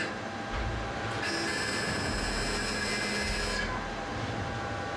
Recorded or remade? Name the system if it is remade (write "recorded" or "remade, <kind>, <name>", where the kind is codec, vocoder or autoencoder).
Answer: recorded